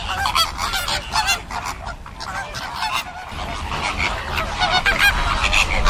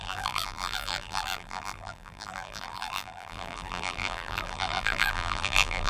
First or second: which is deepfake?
second